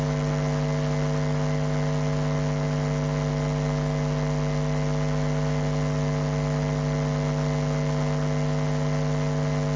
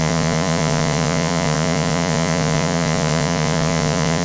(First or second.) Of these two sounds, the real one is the first